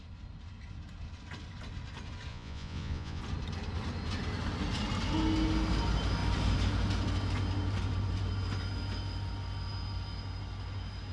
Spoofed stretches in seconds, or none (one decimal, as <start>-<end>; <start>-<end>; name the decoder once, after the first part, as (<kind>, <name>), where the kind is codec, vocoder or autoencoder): 2.3-3.2 (vocoder, Vocos)